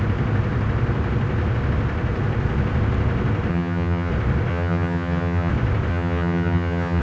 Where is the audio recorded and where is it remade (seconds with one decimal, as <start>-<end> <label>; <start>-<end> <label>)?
0.0-3.5 recorded; 3.5-4.1 remade; 4.1-4.5 recorded; 4.5-5.5 remade; 5.5-5.9 recorded; 5.9-7.0 remade